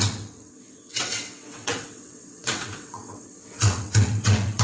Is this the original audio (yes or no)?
no